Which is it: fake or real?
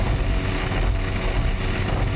real